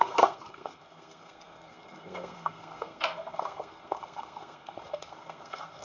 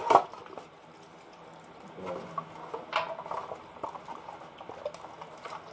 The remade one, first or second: first